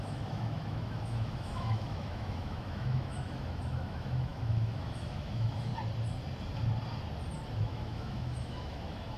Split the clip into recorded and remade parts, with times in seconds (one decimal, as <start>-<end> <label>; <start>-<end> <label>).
0.0-5.7 remade; 5.7-7.6 recorded; 7.6-9.2 remade